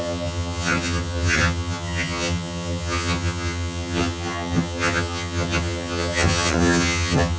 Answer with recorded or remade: remade